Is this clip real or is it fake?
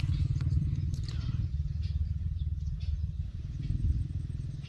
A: fake